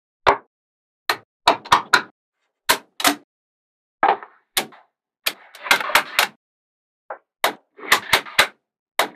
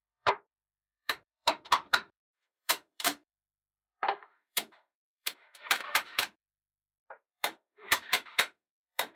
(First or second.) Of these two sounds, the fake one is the second